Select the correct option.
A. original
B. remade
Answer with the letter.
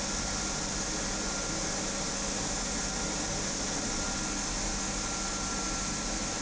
A